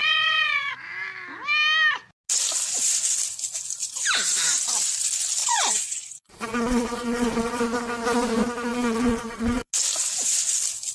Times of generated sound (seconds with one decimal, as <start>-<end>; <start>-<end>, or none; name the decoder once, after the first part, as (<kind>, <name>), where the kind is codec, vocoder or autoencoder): 0.0-0.7 (vocoder, Vocos); 5.4-7.6; 8.7-9.7